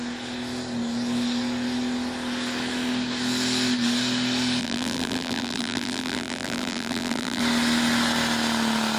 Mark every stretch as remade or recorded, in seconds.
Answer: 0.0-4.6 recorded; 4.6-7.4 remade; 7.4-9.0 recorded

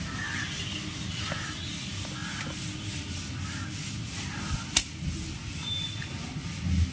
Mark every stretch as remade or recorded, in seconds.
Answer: 0.0-2.2 recorded; 2.2-3.1 remade; 3.1-6.9 recorded

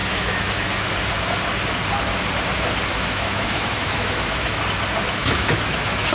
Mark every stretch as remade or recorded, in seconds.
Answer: 0.0-0.7 remade; 0.7-2.9 recorded; 2.9-4.6 remade; 4.6-5.2 recorded; 5.2-6.1 remade

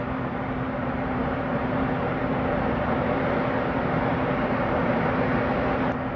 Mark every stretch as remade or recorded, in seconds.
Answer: 0.0-5.5 remade; 5.5-6.2 recorded

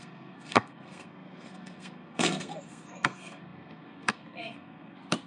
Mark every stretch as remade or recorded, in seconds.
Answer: 0.0-5.3 remade

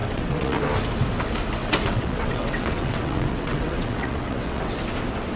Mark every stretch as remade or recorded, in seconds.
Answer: 0.0-0.6 remade; 0.6-1.6 recorded; 1.6-4.8 remade; 4.8-5.4 recorded

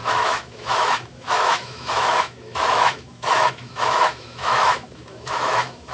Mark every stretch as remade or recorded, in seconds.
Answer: 0.0-5.9 remade